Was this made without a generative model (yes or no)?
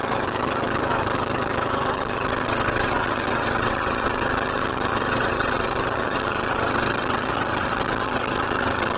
no